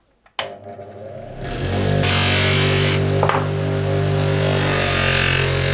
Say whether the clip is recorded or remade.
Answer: recorded